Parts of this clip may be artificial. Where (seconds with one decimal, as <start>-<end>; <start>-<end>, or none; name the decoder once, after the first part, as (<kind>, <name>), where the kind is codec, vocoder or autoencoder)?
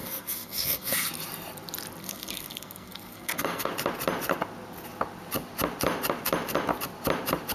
0.0-1.1 (codec, SNAC); 2.0-3.7